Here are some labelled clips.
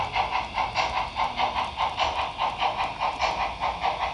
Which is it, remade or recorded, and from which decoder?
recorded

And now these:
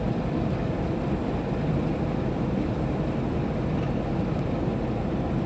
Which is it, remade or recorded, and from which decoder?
recorded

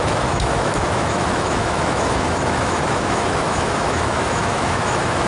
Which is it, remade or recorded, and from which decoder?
remade, autoencoder, DAC-VAE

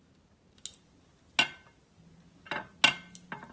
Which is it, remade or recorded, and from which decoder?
recorded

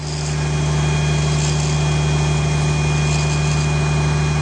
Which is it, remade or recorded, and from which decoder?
recorded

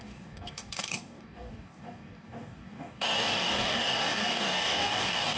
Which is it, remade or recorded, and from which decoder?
remade, codec, DAC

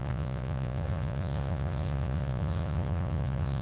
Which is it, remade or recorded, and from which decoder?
remade, vocoder, Vocos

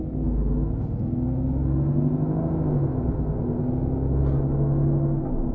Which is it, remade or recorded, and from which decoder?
recorded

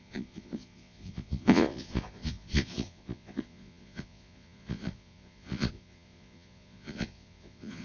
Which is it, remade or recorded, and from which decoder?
remade, vocoder, Vocos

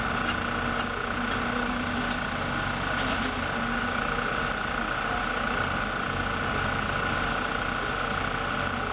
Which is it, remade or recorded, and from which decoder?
recorded